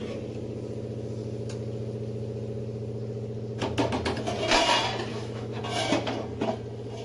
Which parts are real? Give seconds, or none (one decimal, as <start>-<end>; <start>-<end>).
0.0-5.1; 5.6-7.0